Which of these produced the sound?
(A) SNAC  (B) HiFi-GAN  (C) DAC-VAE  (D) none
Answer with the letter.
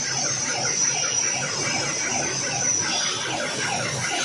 D